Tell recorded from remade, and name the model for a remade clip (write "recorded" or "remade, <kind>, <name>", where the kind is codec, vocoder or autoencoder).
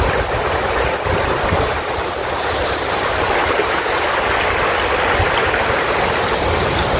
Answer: recorded